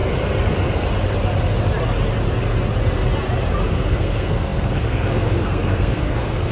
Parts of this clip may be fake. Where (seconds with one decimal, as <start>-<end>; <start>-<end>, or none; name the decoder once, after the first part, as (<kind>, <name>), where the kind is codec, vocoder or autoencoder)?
3.7-6.5 (codec, SNAC)